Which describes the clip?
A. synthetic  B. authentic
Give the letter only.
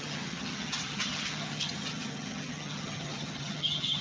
A